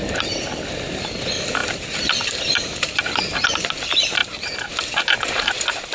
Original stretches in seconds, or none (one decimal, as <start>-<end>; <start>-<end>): 0.6-4.2; 4.7-5.9